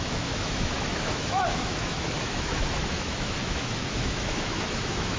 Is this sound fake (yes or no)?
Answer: yes